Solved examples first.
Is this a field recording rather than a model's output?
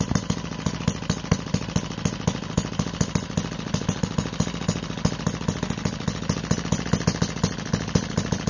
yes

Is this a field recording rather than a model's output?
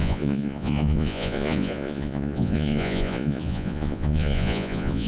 no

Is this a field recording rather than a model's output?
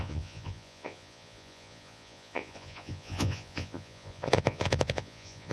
no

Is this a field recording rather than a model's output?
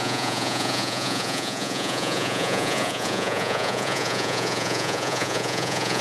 no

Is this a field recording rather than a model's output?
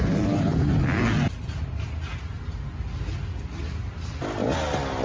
yes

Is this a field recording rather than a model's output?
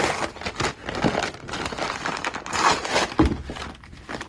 yes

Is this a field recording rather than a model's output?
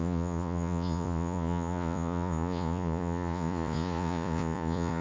no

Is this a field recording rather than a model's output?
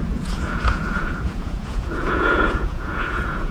no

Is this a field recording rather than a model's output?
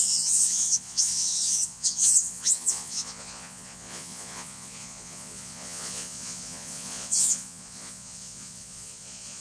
no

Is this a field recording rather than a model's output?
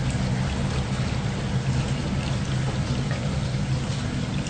yes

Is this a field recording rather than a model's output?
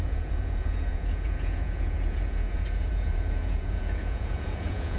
no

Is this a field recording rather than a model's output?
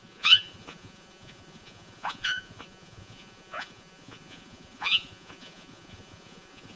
no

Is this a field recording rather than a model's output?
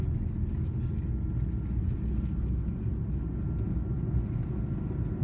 yes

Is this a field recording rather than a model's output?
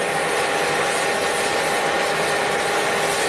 yes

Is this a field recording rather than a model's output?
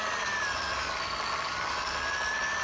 yes